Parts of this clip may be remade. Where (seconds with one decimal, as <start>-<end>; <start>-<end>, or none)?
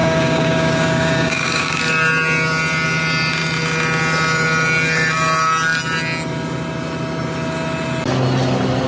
0.0-1.8